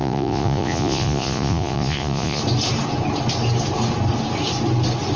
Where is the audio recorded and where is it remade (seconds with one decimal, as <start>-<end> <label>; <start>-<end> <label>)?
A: 0.0-2.4 remade; 2.4-5.2 recorded